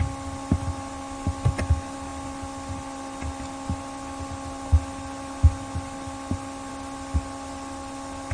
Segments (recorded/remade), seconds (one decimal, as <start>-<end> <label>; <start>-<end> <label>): 0.0-8.3 recorded